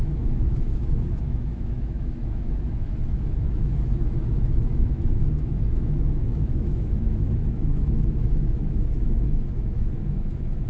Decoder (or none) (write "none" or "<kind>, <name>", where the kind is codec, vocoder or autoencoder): autoencoder, DAC-VAE